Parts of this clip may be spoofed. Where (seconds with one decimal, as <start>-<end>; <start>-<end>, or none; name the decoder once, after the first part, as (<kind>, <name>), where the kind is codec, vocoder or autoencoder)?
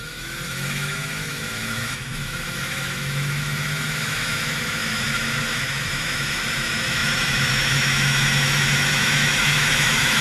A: 0.0-10.2 (autoencoder, DAC-VAE)